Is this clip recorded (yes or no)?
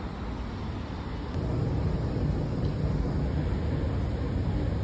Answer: yes